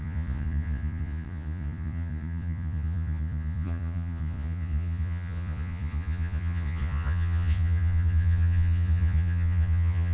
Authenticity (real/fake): fake